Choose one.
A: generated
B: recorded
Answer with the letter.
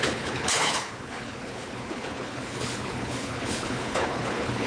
A